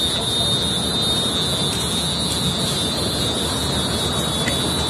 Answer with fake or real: real